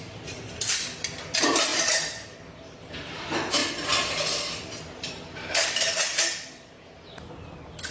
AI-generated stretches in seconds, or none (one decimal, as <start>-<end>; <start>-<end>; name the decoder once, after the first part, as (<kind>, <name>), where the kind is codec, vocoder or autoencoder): none